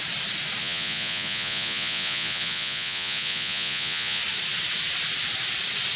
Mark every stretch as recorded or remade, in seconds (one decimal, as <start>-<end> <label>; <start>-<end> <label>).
0.0-0.6 recorded; 0.6-4.2 remade; 4.2-6.0 recorded